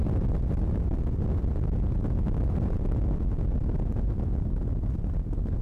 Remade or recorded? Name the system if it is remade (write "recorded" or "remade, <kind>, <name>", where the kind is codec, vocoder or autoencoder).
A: recorded